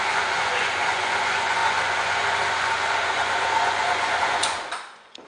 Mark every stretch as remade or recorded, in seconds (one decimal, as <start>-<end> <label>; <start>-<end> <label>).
0.0-5.3 remade